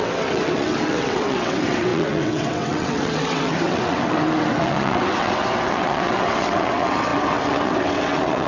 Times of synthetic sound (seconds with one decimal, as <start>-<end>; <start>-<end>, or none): 0.0-8.5